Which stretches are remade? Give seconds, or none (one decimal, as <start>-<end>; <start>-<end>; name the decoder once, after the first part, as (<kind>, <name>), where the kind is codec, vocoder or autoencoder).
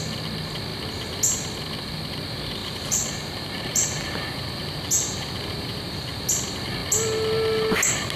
2.6-6.2 (vocoder, BigVGAN v2)